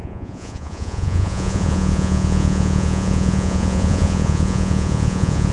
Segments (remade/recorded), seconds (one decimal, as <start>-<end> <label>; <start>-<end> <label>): 0.0-5.5 remade